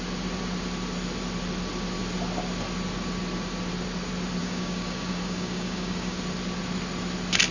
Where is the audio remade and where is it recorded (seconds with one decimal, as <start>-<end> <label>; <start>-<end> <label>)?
0.0-4.4 recorded; 4.4-6.2 remade; 6.2-7.5 recorded